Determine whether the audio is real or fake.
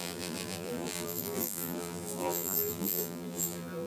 fake